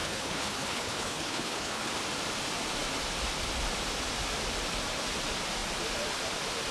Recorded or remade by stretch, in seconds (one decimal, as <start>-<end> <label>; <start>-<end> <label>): 0.0-1.9 remade; 1.9-6.7 recorded